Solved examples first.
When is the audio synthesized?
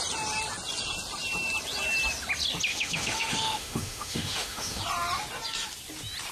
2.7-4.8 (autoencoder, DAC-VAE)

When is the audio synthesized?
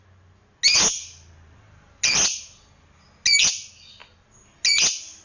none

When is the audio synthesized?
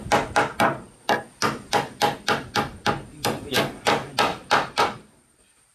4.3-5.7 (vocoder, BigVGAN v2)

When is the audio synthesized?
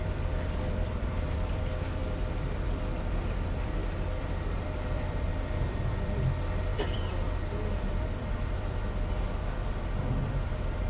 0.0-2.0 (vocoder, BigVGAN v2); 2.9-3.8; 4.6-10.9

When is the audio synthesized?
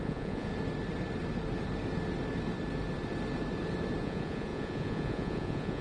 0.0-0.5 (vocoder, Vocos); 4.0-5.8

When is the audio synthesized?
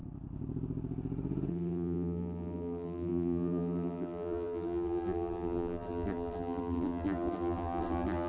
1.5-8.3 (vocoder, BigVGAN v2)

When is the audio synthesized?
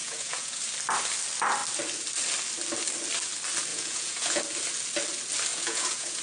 0.0-0.6 (vocoder, Vocos); 3.7-4.4; 5.5-6.2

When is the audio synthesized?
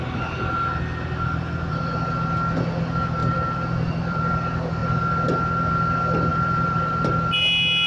3.2-4.3 (vocoder, BigVGAN v2); 6.3-7.1